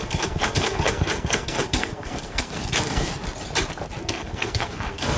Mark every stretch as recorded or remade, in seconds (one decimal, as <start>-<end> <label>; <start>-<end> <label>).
0.0-3.1 remade; 3.1-4.0 recorded; 4.0-5.2 remade